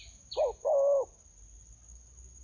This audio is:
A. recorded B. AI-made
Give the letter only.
A